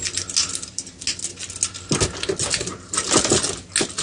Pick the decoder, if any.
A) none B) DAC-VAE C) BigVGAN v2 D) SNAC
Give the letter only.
A